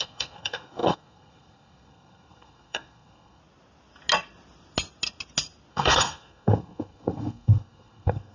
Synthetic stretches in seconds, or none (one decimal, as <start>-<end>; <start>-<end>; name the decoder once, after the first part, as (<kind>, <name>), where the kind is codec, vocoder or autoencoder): 0.0-3.4 (codec, SNAC); 5.7-8.3

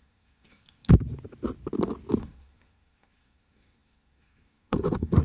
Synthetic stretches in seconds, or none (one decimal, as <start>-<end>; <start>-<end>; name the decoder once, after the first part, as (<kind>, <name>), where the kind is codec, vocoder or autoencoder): 0.0-0.9 (codec, SNAC); 2.2-5.2

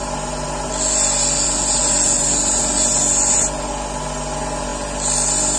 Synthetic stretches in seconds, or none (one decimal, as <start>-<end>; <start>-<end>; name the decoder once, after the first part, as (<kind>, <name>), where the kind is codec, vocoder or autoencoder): none

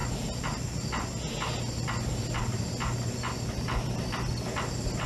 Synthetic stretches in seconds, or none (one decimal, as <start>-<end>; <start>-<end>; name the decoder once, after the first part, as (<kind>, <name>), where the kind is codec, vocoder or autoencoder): none

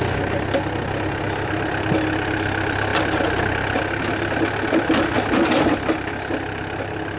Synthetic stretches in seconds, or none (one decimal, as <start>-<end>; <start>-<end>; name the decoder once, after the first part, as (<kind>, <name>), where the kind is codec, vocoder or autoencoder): none

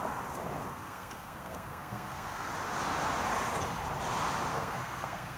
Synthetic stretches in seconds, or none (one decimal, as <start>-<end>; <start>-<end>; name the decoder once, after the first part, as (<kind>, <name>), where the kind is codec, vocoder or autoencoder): 0.7-2.5 (codec, SNAC); 4.5-5.4